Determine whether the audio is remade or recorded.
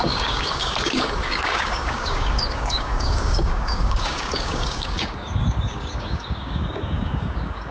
remade